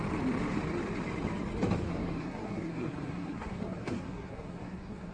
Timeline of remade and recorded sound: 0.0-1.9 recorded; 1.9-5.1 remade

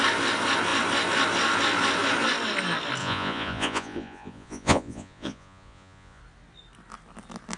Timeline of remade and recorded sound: 0.0-3.0 recorded; 3.0-6.2 remade; 6.2-7.6 recorded

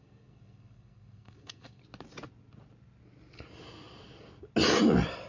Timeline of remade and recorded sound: 0.0-1.8 remade; 1.8-5.3 recorded